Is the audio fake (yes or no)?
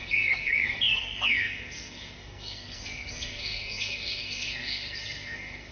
yes